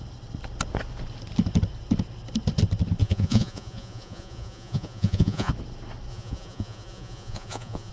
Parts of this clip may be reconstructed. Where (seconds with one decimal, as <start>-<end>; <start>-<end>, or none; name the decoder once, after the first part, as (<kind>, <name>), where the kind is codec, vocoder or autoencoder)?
3.0-5.5 (vocoder, Vocos); 6.1-7.9